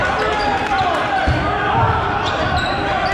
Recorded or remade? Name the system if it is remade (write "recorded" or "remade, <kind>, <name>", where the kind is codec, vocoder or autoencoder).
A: recorded